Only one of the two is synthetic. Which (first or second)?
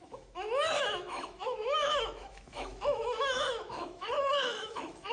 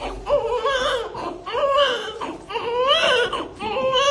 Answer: first